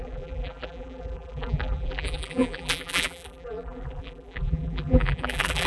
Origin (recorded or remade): remade